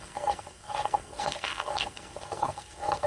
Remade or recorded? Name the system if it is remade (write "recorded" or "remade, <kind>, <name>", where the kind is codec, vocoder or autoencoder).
remade, codec, SNAC